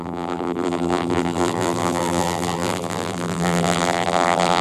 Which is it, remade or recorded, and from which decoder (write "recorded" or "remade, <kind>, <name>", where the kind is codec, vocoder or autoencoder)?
remade, vocoder, BigVGAN v2